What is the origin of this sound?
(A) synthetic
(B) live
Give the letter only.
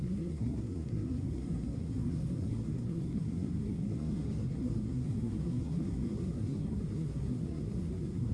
A